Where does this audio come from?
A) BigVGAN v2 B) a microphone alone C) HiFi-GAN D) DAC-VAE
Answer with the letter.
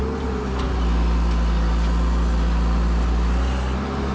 B